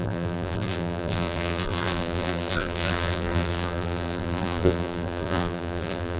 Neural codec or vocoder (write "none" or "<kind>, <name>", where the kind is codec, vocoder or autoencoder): vocoder, BigVGAN v2